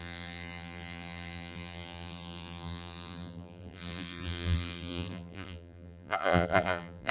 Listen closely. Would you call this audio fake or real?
fake